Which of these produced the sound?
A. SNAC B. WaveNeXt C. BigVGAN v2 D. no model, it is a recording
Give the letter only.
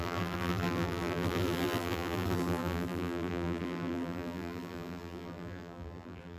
C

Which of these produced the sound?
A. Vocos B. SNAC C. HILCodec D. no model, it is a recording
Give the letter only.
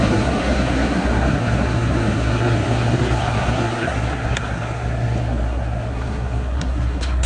B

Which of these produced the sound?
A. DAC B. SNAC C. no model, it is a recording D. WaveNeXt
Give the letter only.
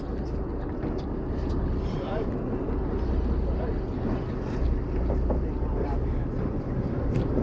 C